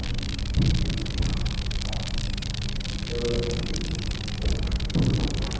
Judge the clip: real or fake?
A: real